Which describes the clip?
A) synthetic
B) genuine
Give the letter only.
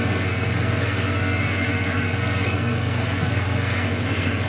A